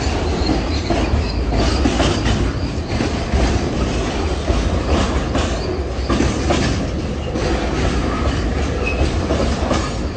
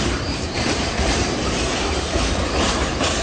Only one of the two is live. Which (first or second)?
first